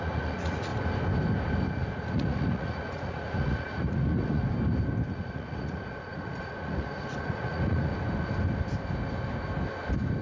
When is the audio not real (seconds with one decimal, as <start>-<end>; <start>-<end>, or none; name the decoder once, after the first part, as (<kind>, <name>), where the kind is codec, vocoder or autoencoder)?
0.0-0.7 (vocoder, Vocos); 2.0-4.4; 5.1-7.9